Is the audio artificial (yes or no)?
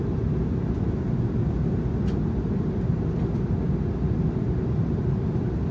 no